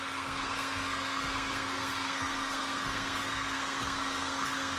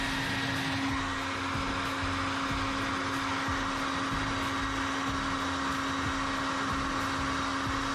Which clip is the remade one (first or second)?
first